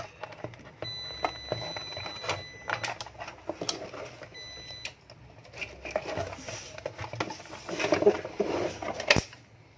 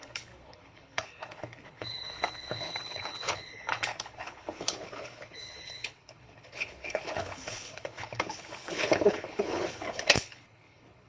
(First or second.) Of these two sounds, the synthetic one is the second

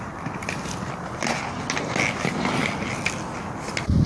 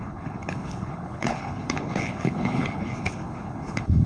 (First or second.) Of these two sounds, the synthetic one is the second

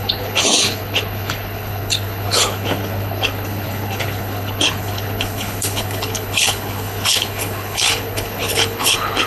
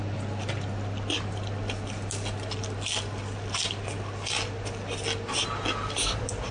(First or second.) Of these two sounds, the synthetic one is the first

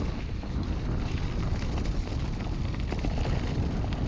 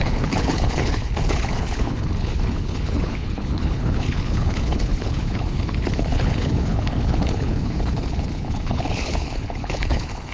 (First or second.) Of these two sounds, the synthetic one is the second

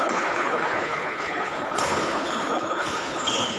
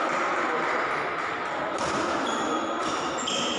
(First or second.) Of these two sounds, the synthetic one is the first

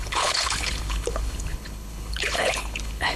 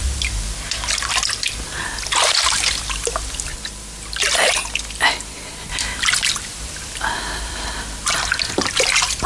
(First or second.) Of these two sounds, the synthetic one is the first